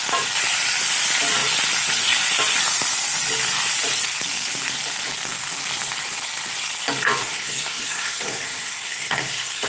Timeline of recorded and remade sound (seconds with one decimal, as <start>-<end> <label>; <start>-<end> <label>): 0.0-7.2 recorded; 7.2-9.7 remade